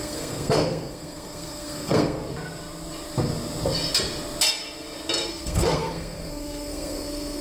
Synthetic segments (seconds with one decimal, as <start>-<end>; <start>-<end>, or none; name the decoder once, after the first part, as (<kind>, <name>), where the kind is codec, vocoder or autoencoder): 0.0-2.2 (codec, SNAC); 5.3-7.4